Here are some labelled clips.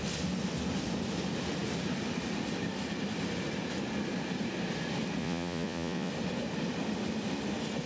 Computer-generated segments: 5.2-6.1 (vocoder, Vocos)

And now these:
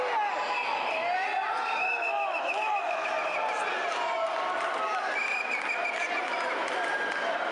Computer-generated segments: 1.8-3.1 (autoencoder, DAC-VAE)

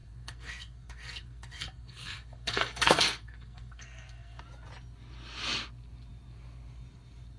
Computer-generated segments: 0.0-4.4 (codec, SNAC)

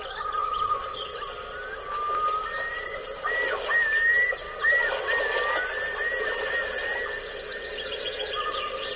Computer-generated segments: none

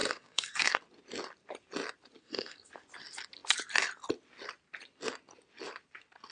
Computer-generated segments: 0.0-0.8 (codec, SNAC); 2.2-2.7

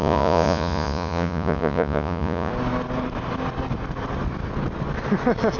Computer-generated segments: 0.0-2.5 (vocoder, Vocos)